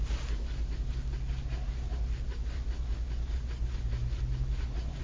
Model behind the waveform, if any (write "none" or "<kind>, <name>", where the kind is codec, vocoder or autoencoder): none